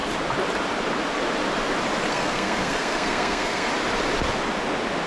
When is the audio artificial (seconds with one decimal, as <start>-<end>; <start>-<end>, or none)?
2.1-3.7